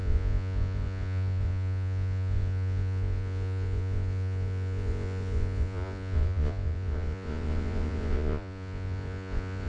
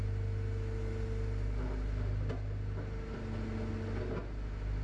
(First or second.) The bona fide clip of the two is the second